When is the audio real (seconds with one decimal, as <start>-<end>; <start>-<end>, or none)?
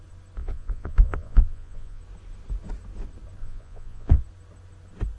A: 0.0-0.4; 2.0-3.4; 4.2-5.2